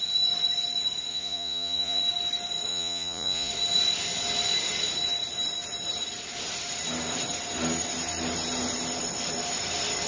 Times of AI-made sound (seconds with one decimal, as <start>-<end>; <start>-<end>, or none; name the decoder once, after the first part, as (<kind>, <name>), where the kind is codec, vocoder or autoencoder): 1.1-2.0 (vocoder, Vocos); 2.7-3.5